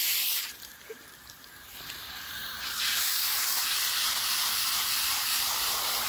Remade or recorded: remade